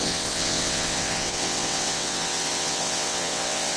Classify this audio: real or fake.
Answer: fake